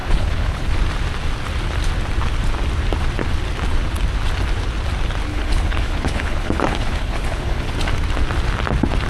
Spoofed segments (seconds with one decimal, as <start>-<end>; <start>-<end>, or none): 0.0-0.7; 5.3-7.7